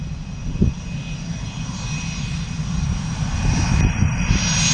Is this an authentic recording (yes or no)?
yes